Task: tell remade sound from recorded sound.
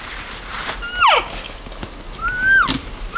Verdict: recorded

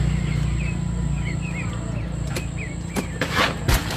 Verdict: recorded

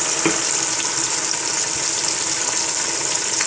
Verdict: recorded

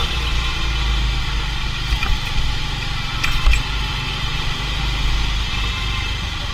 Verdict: recorded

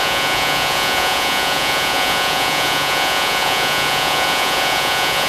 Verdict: remade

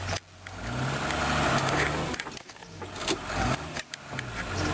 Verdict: recorded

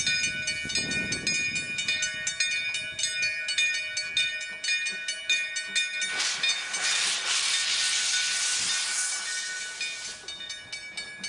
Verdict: recorded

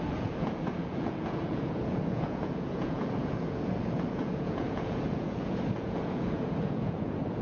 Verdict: remade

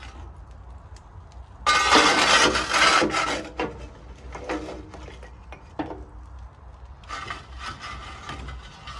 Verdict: recorded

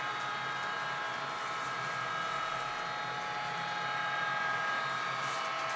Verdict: recorded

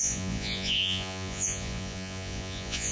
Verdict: remade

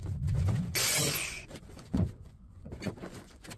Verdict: remade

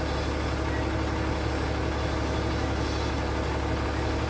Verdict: recorded